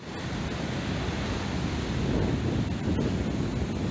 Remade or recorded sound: recorded